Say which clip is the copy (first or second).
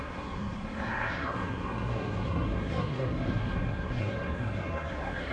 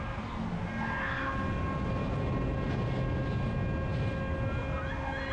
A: first